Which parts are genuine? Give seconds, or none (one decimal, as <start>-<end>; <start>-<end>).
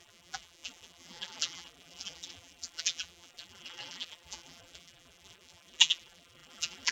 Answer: none